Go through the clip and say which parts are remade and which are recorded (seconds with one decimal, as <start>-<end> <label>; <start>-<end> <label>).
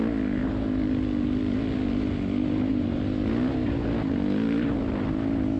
0.0-5.6 recorded